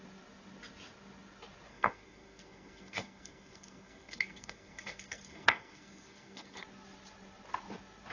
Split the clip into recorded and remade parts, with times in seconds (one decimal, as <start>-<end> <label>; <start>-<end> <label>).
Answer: 0.0-1.7 recorded; 1.7-6.6 remade; 6.6-8.1 recorded